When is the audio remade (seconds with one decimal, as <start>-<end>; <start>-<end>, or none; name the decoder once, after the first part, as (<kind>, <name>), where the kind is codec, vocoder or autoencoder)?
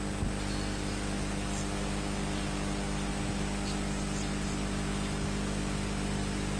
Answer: none